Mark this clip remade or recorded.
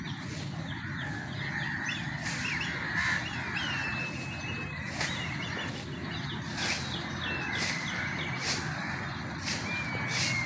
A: recorded